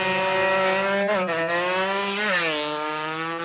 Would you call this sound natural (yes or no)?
yes